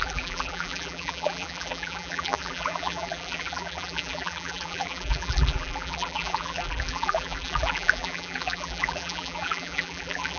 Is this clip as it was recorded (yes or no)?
no